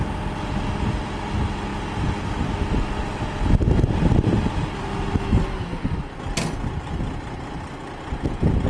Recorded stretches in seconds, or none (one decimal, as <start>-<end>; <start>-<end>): 0.0-8.7